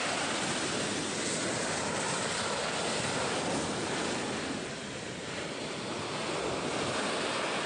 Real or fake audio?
real